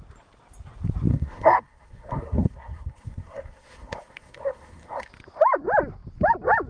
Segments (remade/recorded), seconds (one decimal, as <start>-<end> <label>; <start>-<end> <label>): 0.0-1.1 recorded; 1.1-5.1 remade; 5.1-6.7 recorded